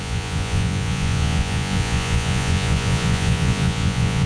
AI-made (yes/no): yes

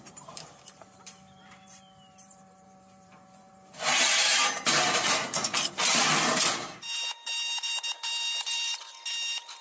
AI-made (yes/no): yes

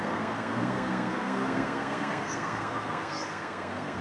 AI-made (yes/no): yes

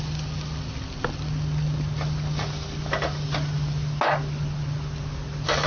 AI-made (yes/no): no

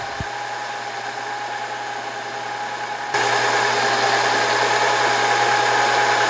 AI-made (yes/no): no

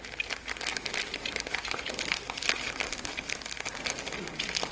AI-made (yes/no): no